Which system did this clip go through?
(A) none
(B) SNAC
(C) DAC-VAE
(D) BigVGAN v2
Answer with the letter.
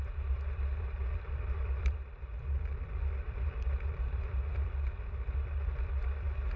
D